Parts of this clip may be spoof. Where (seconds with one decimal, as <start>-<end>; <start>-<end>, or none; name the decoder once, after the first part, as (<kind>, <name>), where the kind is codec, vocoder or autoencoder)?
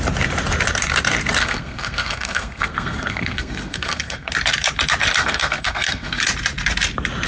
1.4-4.3 (codec, SNAC); 5.2-6.2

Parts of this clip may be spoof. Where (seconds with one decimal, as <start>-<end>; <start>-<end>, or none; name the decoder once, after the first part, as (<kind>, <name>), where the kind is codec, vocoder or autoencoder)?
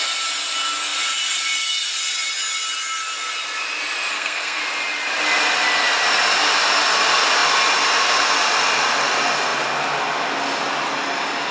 4.1-4.6 (codec, SNAC)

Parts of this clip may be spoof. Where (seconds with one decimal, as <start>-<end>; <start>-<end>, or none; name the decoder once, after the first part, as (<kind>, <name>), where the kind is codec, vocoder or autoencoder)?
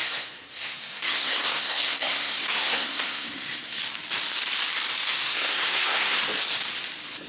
0.0-3.8 (codec, SNAC); 5.2-6.2